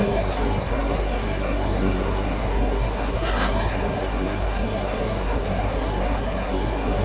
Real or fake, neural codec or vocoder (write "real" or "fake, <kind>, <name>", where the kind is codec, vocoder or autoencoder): fake, codec, SNAC